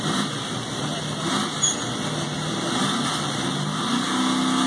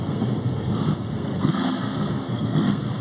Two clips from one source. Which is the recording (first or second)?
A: first